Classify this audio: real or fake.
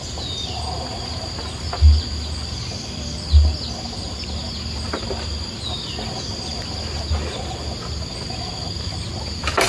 real